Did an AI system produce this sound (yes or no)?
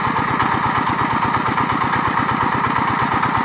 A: no